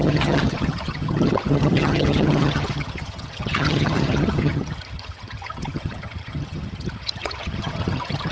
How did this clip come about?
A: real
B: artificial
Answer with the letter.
B